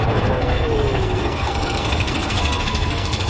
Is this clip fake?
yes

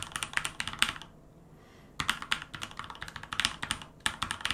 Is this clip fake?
no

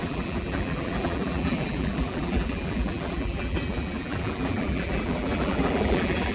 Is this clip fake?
yes